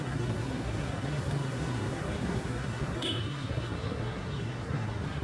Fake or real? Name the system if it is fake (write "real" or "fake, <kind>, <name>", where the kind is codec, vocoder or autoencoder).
fake, codec, SNAC